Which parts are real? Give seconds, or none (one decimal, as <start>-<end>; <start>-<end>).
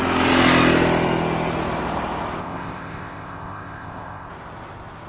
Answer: 0.0-2.4; 4.3-5.1